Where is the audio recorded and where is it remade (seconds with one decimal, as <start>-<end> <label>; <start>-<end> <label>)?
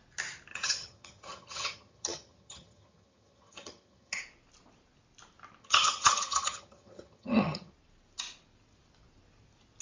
0.0-0.5 recorded; 0.5-4.2 remade; 4.2-5.6 recorded; 5.6-7.7 remade; 7.7-9.8 recorded